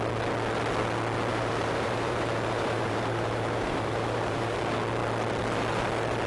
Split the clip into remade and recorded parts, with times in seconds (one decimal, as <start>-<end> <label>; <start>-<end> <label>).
0.0-1.3 recorded; 1.3-4.6 remade; 4.6-6.3 recorded